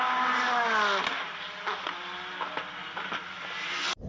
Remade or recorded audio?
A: recorded